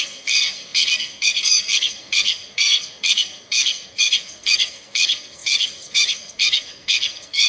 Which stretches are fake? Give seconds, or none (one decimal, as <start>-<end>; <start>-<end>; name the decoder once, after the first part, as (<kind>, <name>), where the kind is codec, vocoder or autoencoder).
0.0-7.5 (codec, SNAC)